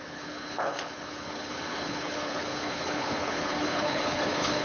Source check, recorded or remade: remade